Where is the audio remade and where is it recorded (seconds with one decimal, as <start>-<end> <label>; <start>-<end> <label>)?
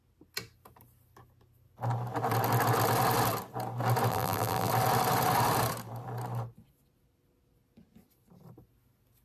0.0-4.1 recorded; 4.1-4.7 remade; 4.7-9.2 recorded